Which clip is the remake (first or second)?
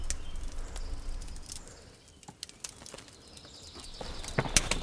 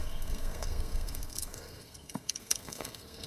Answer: second